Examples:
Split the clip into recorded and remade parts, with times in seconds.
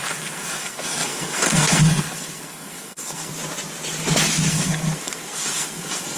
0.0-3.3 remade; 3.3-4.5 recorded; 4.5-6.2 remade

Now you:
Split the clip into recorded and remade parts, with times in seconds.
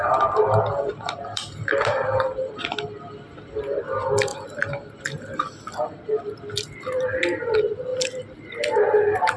0.0-0.9 recorded; 0.9-3.8 remade; 3.8-4.3 recorded; 4.3-6.1 remade; 6.1-7.9 recorded; 7.9-9.4 remade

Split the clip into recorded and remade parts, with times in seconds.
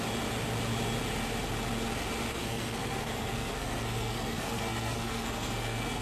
0.0-2.3 recorded; 2.3-6.0 remade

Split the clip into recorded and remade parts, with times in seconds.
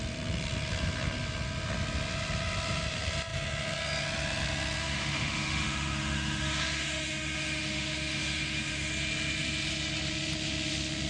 0.0-4.8 recorded; 4.8-8.9 remade; 8.9-11.1 recorded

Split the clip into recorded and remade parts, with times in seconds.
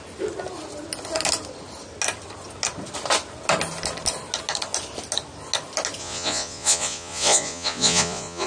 0.0-6.0 recorded; 6.0-8.5 remade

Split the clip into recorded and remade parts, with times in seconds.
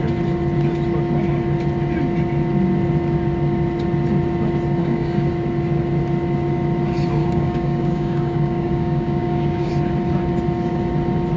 0.0-4.8 recorded; 4.8-5.3 remade; 5.3-7.2 recorded; 7.2-9.7 remade; 9.7-11.4 recorded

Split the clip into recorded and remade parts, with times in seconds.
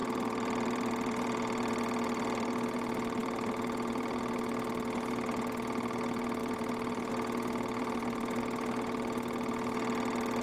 0.0-2.5 remade; 2.5-3.2 recorded; 3.2-4.2 remade; 4.2-6.4 recorded; 6.4-7.1 remade; 7.1-7.7 recorded; 7.7-8.4 remade; 8.4-10.4 recorded